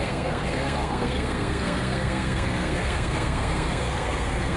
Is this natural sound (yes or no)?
no